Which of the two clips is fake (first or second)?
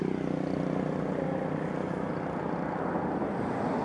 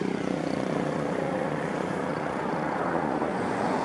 second